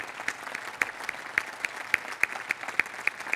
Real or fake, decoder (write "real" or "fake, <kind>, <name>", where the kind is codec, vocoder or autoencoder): real